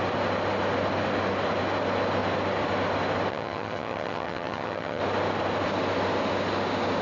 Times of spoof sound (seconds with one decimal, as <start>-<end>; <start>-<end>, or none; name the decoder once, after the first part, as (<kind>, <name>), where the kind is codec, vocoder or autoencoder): 3.3-5.0 (vocoder, HiFi-GAN)